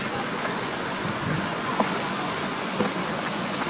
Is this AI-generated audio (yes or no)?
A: yes